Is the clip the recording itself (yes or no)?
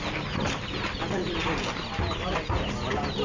yes